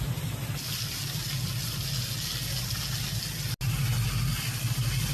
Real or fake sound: real